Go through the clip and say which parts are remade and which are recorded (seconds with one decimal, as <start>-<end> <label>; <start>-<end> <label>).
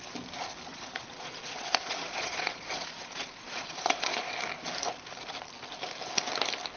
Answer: 0.0-0.7 recorded; 0.7-4.3 remade; 4.3-6.8 recorded